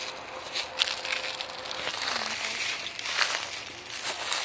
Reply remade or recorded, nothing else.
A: recorded